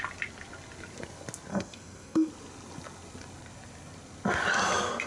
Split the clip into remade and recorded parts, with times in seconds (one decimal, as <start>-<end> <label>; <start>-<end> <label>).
0.0-1.5 recorded; 1.5-2.3 remade; 2.3-5.1 recorded